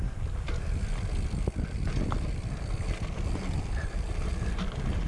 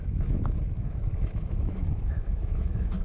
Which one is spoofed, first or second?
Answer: second